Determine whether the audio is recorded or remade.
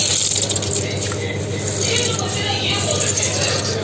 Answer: recorded